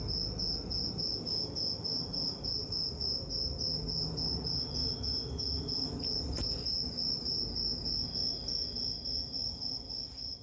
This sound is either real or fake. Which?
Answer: real